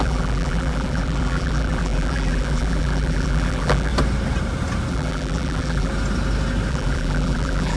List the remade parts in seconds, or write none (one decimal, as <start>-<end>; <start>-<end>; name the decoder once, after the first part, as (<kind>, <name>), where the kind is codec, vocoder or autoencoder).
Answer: 0.0-3.9 (vocoder, BigVGAN v2); 4.9-5.9; 6.7-7.8